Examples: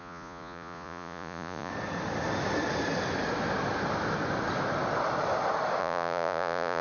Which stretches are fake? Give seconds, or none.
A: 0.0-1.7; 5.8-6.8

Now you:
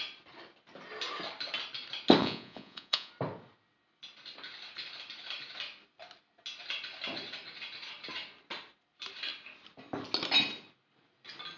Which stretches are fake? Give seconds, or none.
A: 2.2-3.1

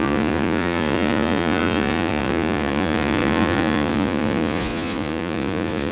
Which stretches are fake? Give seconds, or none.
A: 0.0-5.9

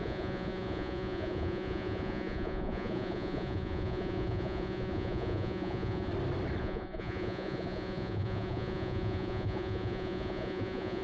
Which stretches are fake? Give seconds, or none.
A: 0.0-6.1; 6.6-11.0

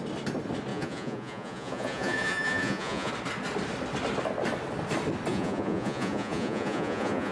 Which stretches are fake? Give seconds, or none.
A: 0.7-3.1; 5.3-7.3

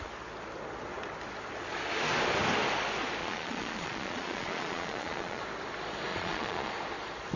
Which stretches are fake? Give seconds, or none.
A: 3.2-5.4; 6.1-6.7

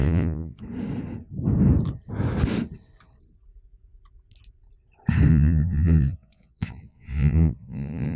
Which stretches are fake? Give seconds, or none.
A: 0.0-0.6; 5.3-8.2

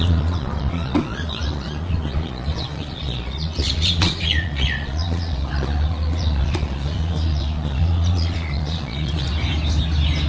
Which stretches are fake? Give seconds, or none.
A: 0.0-9.3